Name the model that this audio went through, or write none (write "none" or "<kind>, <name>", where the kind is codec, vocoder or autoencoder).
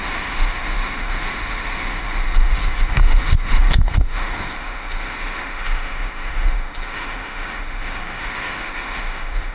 autoencoder, DAC-VAE